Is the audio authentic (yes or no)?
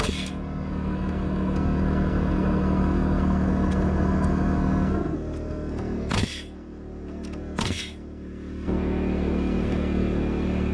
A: no